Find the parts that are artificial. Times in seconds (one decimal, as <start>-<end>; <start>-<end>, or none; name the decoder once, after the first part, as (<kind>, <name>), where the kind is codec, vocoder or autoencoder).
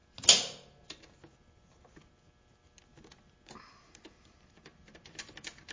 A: none